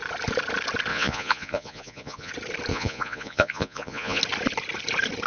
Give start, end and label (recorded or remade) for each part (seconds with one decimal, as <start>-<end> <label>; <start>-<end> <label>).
0.0-0.9 recorded; 0.9-2.3 remade; 2.3-2.7 recorded; 2.7-4.2 remade; 4.2-5.3 recorded